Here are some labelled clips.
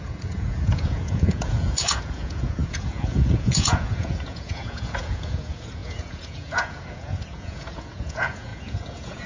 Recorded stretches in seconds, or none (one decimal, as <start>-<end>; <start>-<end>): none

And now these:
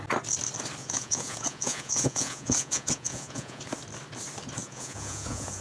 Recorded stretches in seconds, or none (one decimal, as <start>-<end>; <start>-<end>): 0.0-0.8; 3.6-4.6

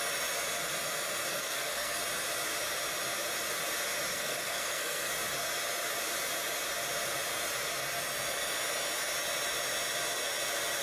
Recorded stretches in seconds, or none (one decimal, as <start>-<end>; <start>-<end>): 0.0-1.3; 2.0-4.1; 5.1-10.8

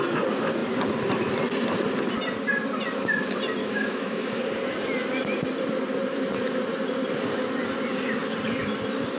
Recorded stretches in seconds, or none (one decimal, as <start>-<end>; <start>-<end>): 0.0-3.6; 4.3-9.2

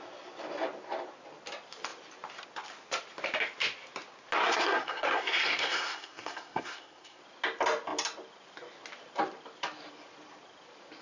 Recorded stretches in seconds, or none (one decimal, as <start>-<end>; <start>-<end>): 0.0-4.4; 7.2-11.0

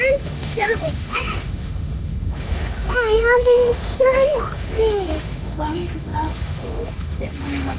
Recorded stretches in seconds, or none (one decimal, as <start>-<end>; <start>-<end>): none